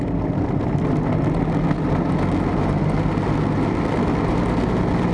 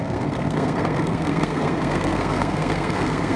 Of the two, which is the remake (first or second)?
second